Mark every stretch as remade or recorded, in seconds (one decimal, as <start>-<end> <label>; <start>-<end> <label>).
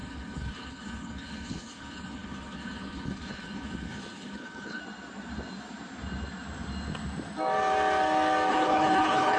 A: 0.0-4.8 remade; 4.8-8.5 recorded; 8.5-9.4 remade